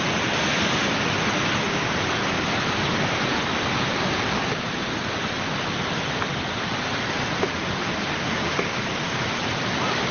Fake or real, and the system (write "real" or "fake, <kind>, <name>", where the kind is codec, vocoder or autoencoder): real